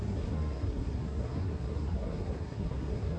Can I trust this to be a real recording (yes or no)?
no